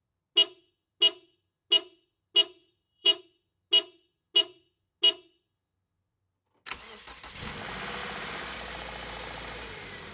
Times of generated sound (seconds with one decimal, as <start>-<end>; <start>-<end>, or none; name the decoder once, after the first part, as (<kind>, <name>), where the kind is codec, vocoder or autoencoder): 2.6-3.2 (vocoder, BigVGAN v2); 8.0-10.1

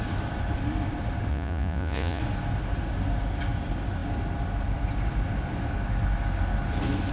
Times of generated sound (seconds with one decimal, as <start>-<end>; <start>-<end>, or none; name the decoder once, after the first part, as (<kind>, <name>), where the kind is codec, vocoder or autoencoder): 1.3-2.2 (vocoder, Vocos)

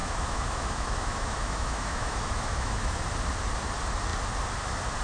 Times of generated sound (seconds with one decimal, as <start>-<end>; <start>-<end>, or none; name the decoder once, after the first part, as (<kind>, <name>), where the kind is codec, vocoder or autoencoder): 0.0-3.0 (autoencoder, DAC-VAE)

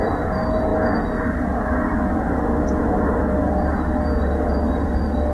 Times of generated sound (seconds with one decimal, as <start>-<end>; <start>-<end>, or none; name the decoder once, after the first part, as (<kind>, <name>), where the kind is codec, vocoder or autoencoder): none

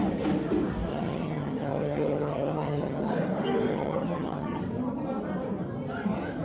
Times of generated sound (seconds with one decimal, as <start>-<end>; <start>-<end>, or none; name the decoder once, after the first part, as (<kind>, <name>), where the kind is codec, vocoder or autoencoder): 0.9-3.1 (vocoder, HiFi-GAN); 3.7-4.6

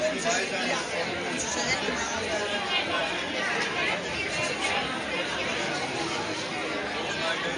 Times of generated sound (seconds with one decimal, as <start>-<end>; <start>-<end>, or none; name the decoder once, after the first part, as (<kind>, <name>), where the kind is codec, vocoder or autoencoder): none

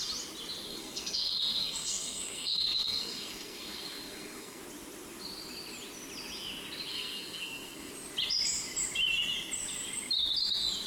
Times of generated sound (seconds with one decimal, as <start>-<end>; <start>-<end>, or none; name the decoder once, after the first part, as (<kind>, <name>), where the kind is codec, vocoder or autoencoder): 0.7-4.6 (codec, SNAC); 6.9-7.9